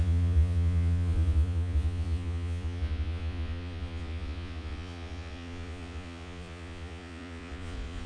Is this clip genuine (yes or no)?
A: no